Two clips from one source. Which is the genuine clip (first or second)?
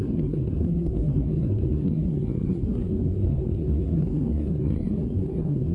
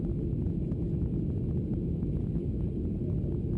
second